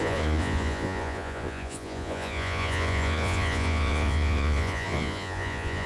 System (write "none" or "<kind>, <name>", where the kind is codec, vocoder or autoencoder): vocoder, Vocos